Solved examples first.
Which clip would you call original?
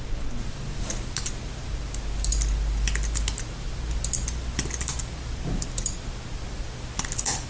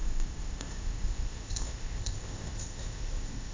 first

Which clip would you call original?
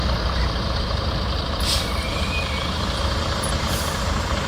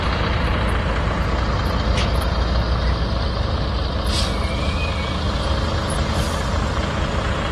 second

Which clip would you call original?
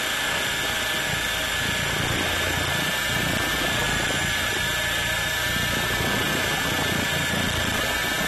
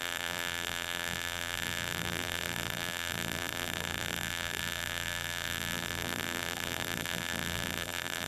first